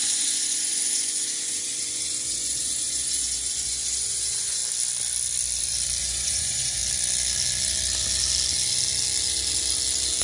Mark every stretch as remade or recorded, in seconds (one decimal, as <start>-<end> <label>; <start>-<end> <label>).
0.0-4.6 remade; 4.6-6.0 recorded; 6.0-6.8 remade; 6.8-10.2 recorded

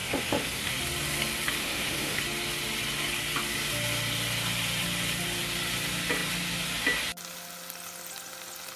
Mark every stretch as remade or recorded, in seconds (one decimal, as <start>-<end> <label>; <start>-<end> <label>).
0.0-0.7 remade; 0.7-1.6 recorded; 1.6-2.2 remade; 2.2-8.8 recorded

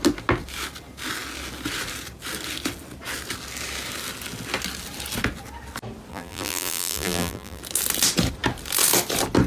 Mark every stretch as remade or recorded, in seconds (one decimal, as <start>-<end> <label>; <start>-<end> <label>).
0.0-6.1 recorded; 6.1-7.6 remade; 7.6-9.5 recorded

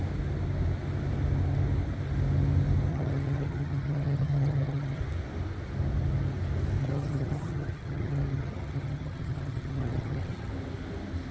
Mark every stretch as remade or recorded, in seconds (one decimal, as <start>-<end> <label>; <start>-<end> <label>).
0.0-2.9 recorded; 2.9-5.0 remade; 5.0-6.8 recorded; 6.8-10.5 remade; 10.5-11.3 recorded

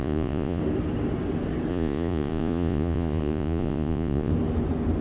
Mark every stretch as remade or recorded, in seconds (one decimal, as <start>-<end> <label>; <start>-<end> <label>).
0.0-0.6 remade; 0.6-1.7 recorded; 1.7-4.3 remade; 4.3-5.0 recorded

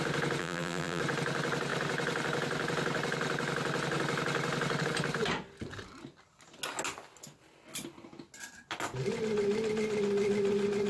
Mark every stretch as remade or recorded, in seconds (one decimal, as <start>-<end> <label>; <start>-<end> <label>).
0.0-0.4 recorded; 0.4-1.0 remade; 1.0-10.9 recorded

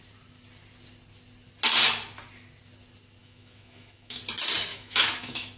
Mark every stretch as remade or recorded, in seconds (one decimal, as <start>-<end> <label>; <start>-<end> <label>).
0.0-3.2 recorded; 3.2-4.2 remade; 4.2-4.7 recorded; 4.7-5.6 remade

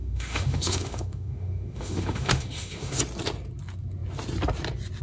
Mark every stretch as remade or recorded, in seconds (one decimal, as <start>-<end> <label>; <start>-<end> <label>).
0.0-3.0 remade; 3.0-5.0 recorded